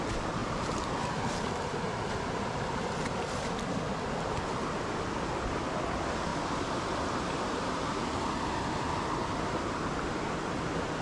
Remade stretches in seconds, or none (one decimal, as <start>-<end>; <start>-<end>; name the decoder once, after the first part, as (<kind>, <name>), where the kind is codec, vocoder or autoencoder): none